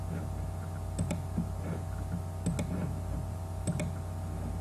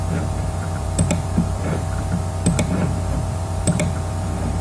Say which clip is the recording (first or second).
first